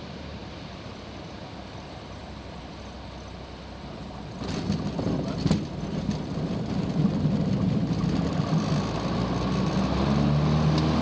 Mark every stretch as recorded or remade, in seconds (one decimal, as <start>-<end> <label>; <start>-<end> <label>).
0.0-11.0 recorded